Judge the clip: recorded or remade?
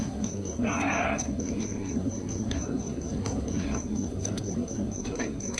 remade